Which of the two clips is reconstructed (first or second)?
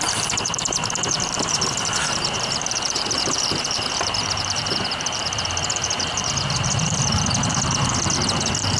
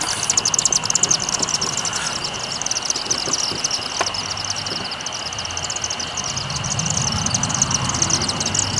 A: first